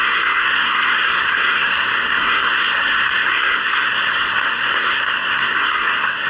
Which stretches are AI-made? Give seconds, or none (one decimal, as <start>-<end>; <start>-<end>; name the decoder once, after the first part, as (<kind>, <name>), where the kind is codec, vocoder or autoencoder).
0.0-6.3 (codec, SNAC)